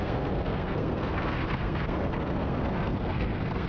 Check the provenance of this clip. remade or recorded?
remade